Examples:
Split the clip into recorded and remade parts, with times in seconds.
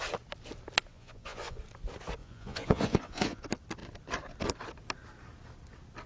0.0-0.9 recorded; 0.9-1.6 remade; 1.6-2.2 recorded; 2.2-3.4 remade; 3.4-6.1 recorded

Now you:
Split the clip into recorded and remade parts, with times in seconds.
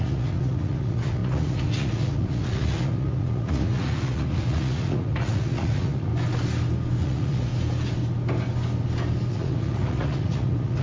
0.0-6.1 remade; 6.1-7.0 recorded; 7.0-7.5 remade; 7.5-9.3 recorded; 9.3-10.8 remade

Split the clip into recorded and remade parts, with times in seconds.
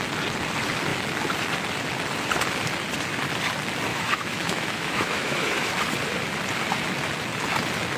0.0-3.9 recorded; 3.9-5.7 remade; 5.7-8.0 recorded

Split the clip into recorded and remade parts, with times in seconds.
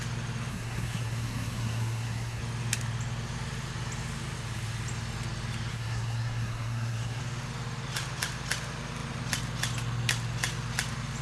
0.0-0.5 recorded; 0.5-2.4 remade; 2.4-5.7 recorded; 5.7-7.2 remade; 7.2-11.2 recorded